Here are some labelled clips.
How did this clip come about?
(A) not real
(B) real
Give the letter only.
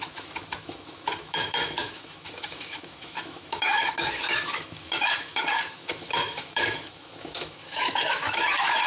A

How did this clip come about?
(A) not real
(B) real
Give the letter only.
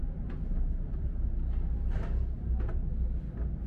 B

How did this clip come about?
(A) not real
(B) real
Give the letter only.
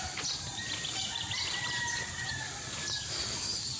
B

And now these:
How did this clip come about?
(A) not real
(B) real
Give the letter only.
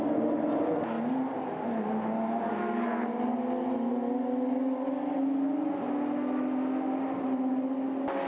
B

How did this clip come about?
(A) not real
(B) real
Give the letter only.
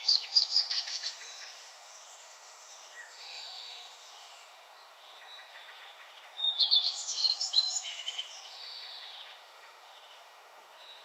A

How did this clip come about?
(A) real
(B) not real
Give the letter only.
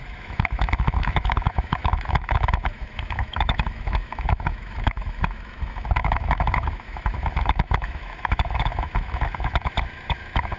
B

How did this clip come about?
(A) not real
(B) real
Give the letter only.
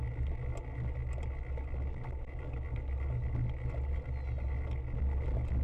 B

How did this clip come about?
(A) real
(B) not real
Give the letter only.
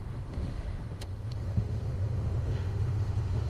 B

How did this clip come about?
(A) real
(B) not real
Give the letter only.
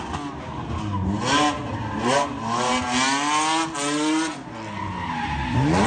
A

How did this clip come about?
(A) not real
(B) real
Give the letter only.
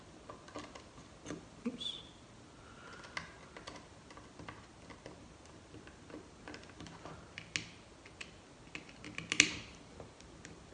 B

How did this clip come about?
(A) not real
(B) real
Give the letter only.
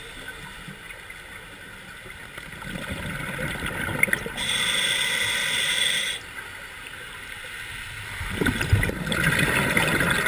B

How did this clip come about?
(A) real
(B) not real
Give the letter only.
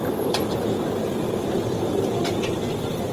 A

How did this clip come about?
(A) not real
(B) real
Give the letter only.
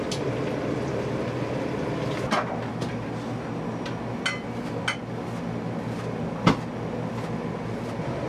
B